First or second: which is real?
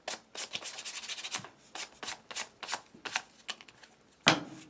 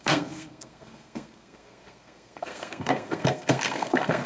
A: first